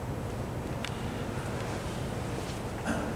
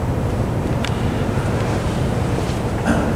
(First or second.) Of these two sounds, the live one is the first